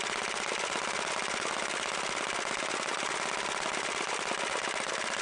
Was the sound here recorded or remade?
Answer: recorded